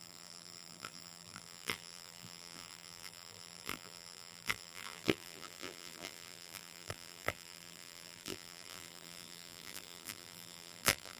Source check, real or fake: fake